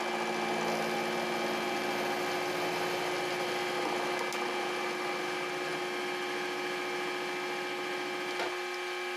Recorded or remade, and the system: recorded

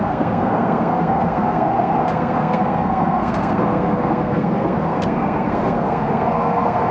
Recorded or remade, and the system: remade, codec, SNAC